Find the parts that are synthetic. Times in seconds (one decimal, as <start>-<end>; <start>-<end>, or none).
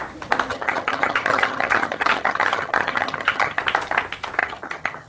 0.5-3.6; 4.4-5.1